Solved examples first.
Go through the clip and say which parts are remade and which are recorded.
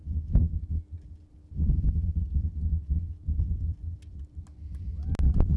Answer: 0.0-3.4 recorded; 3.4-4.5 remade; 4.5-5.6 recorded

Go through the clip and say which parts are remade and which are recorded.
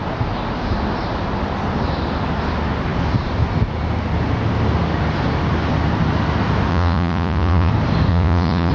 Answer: 0.0-6.7 recorded; 6.7-7.7 remade; 7.7-8.1 recorded; 8.1-8.7 remade